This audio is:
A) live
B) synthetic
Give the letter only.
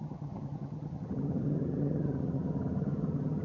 B